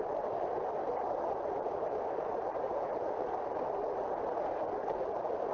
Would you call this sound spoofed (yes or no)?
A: no